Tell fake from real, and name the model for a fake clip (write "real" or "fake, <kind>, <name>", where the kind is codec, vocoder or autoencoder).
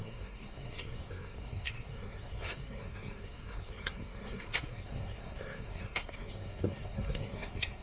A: fake, codec, SNAC